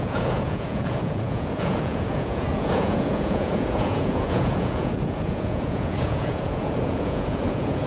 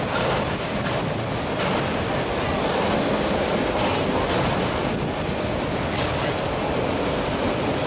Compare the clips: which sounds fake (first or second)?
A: first